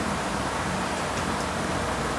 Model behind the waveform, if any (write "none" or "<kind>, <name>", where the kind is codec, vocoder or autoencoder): vocoder, BigVGAN v2